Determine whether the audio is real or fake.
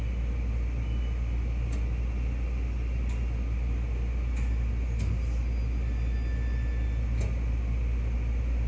real